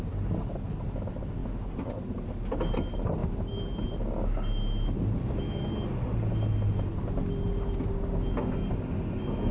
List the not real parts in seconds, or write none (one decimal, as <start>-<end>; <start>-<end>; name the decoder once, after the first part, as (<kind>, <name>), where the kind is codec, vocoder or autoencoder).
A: none